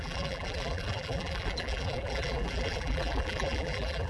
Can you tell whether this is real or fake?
fake